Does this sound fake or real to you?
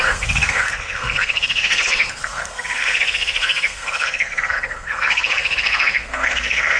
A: fake